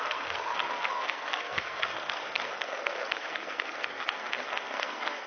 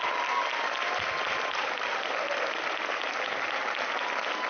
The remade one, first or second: first